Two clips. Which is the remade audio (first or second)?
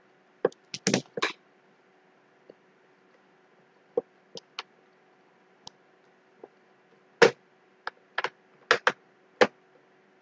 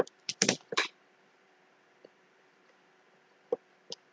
second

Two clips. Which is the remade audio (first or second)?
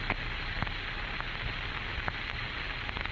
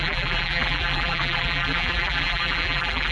second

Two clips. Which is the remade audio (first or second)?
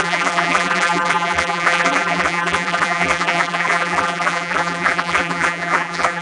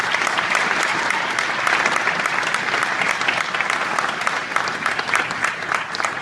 first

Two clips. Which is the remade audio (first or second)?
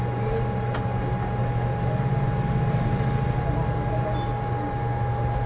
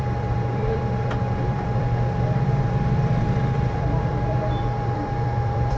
second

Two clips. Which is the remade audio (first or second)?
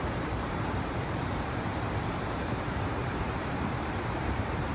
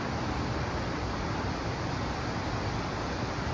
first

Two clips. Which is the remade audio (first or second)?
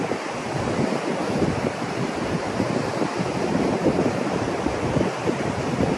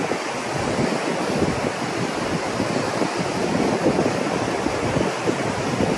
first